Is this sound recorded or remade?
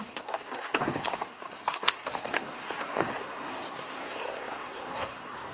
remade